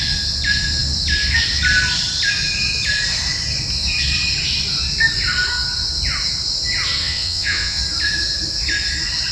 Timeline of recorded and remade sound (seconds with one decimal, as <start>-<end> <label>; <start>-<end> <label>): 0.0-7.0 recorded; 7.0-7.8 remade; 7.8-9.3 recorded